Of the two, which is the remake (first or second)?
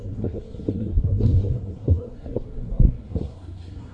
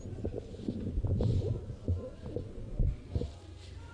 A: first